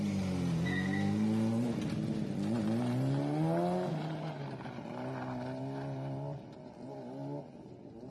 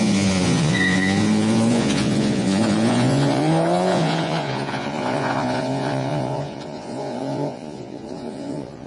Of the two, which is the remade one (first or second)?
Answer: second